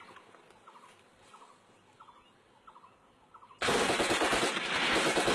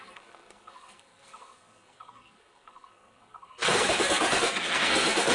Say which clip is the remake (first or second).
second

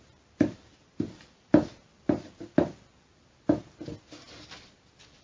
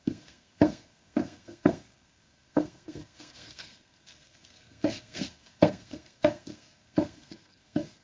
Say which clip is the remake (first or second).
second